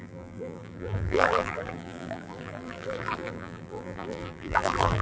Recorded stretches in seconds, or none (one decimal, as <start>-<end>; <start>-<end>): none

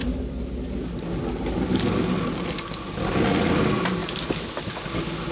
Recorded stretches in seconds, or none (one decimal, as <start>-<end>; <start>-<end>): 0.0-5.3

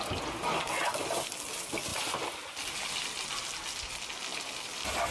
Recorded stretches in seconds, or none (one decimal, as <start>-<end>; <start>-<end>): 0.0-1.9; 2.9-5.1

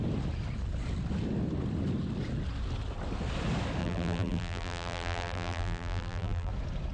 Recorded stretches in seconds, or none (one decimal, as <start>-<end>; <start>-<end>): 0.0-3.8; 6.5-6.9

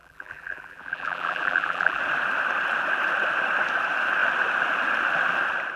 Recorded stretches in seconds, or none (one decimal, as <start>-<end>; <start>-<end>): 2.0-5.8

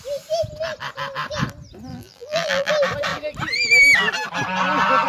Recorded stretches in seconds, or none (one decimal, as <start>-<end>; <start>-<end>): 0.0-1.9; 2.7-5.1

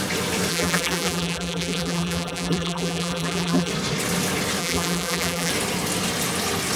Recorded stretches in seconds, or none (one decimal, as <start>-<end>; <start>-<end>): 0.0-0.5; 3.7-4.6; 5.5-6.8